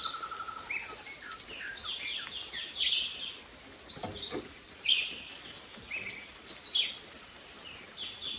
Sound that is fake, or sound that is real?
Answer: real